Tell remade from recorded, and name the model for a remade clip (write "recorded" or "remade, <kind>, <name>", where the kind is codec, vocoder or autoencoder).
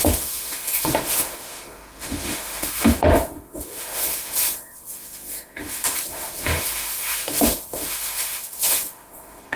remade, autoencoder, DAC-VAE